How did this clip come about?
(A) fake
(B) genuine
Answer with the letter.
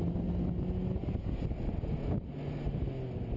B